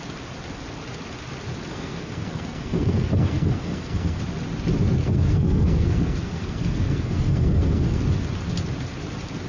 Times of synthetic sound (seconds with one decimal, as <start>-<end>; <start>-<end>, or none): 1.7-4.2; 5.0-8.0